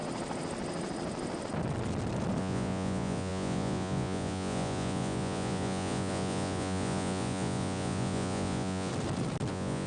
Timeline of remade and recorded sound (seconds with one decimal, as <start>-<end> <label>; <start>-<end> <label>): 0.0-2.4 recorded; 2.4-8.9 remade; 8.9-9.5 recorded; 9.5-9.9 remade